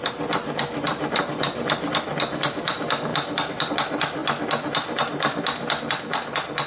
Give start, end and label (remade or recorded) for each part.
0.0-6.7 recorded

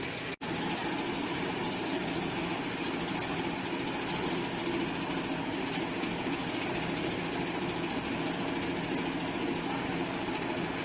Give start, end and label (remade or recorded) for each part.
0.0-1.6 recorded; 1.6-2.5 remade; 2.5-6.1 recorded; 6.1-6.7 remade; 6.7-10.8 recorded

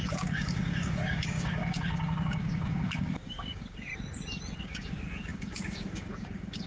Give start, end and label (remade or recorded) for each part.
0.0-3.9 remade; 3.9-4.6 recorded; 4.6-6.7 remade